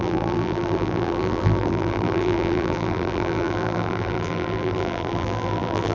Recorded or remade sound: remade